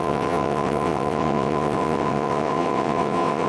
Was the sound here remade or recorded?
remade